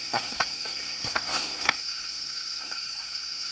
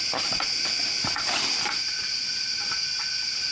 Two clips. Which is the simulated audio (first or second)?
first